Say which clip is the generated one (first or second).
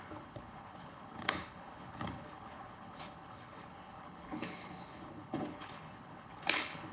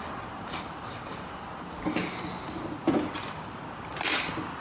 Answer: first